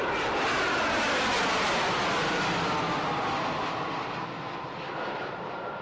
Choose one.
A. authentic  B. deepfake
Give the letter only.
A